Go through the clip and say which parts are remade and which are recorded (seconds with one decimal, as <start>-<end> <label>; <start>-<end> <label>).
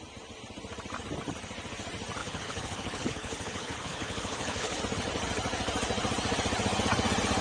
0.0-2.2 recorded; 2.2-4.8 remade; 4.8-7.4 recorded